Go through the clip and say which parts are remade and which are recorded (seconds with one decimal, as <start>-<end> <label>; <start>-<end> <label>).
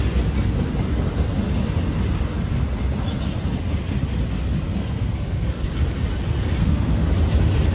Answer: 0.0-4.8 recorded; 4.8-5.7 remade; 5.7-6.6 recorded; 6.6-7.1 remade; 7.1-7.7 recorded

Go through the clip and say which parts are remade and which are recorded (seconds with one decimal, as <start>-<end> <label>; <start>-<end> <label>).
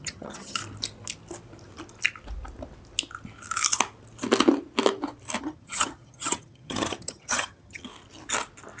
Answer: 0.0-0.6 remade; 0.6-5.4 recorded; 5.4-7.9 remade; 7.9-8.8 recorded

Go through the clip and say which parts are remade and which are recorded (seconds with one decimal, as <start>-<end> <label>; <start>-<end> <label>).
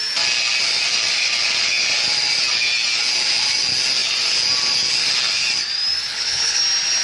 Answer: 0.0-6.1 recorded; 6.1-6.6 remade; 6.6-7.0 recorded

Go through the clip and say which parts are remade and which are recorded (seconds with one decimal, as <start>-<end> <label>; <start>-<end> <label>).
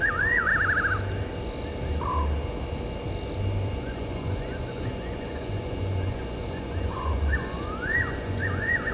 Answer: 0.0-0.5 remade; 0.5-3.8 recorded; 3.8-8.9 remade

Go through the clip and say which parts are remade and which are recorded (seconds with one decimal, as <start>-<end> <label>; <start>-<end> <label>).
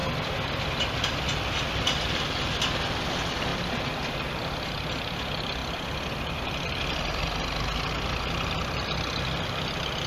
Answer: 0.0-10.1 recorded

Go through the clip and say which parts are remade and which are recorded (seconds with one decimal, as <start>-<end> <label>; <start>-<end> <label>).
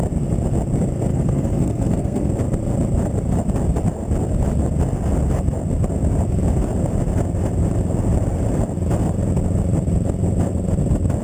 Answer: 0.0-1.1 recorded; 1.1-2.3 remade; 2.3-11.2 recorded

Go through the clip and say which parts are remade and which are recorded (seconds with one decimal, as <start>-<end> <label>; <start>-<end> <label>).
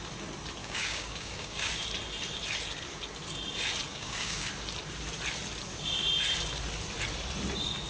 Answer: 0.0-0.6 recorded; 0.6-1.7 remade; 1.7-3.9 recorded; 3.9-4.5 remade; 4.5-7.9 recorded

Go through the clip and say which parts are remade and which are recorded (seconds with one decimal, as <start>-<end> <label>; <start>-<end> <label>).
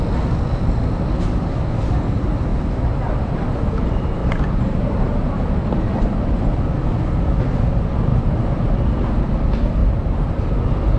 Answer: 0.0-2.5 recorded; 2.5-3.3 remade; 3.3-4.2 recorded; 4.2-6.6 remade; 6.6-8.1 recorded; 8.1-9.3 remade; 9.3-11.0 recorded